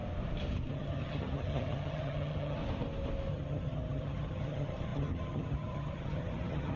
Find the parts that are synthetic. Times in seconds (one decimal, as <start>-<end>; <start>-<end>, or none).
0.7-2.6; 3.3-6.8